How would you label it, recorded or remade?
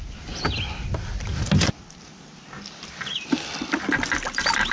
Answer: recorded